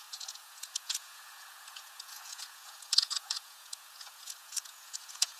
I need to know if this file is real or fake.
fake